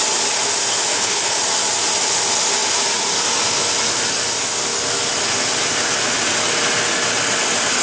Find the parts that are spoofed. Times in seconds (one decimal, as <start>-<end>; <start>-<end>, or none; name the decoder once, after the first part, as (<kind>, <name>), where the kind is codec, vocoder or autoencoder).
0.9-1.4 (codec, HILCodec)